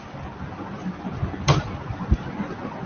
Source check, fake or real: real